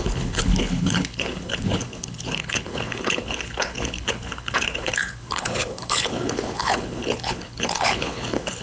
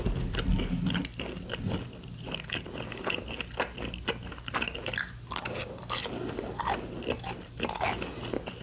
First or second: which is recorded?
second